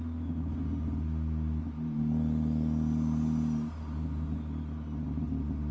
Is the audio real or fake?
real